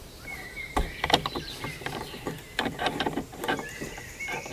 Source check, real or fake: fake